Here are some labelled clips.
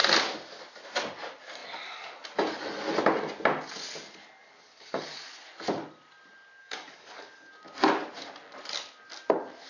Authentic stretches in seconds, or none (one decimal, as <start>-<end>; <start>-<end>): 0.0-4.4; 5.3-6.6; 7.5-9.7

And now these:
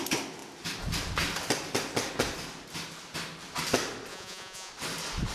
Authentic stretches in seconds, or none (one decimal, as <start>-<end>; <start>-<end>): 0.0-4.1; 4.7-5.3

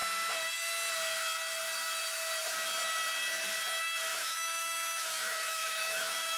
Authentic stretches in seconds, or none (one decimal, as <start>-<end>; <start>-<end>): 0.0-4.1

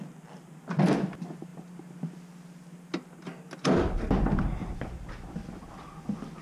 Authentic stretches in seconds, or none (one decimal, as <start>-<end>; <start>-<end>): 0.0-6.4